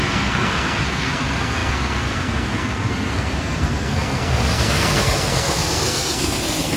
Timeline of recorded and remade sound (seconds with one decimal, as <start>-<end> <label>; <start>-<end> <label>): 0.0-6.8 remade